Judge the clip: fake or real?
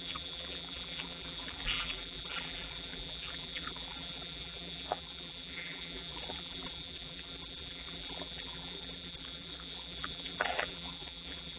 fake